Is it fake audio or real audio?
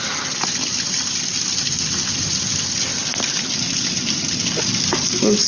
real